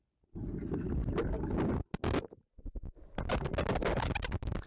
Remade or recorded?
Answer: recorded